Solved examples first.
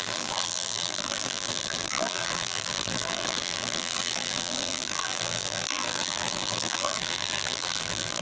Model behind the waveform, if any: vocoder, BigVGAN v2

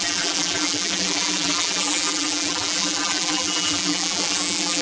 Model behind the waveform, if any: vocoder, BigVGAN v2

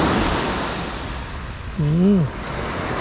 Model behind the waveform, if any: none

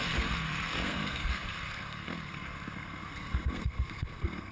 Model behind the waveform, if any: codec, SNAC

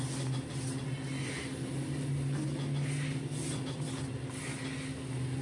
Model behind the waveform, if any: none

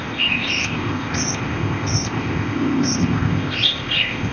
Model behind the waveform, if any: codec, ZipCodec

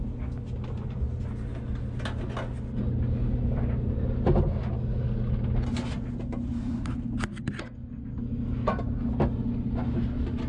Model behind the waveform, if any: none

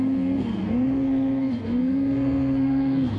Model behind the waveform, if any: codec, SNAC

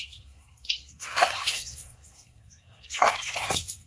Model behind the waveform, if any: codec, SNAC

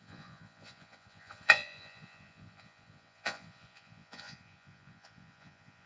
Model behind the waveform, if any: vocoder, Vocos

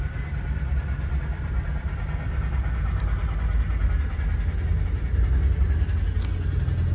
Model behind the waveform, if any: none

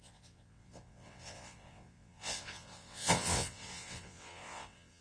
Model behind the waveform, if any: vocoder, WaveNeXt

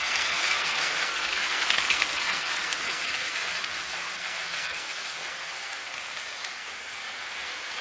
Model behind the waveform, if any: codec, SNAC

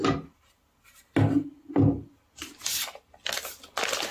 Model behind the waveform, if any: none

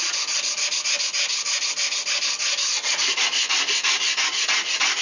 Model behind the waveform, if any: none